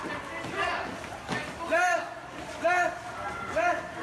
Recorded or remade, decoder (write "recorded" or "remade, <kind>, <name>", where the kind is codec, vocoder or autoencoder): recorded